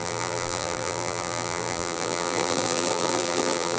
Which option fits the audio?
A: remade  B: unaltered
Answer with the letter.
A